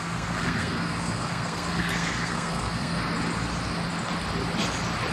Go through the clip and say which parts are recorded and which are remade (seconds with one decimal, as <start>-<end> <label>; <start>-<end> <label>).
0.0-3.0 remade; 3.0-5.1 recorded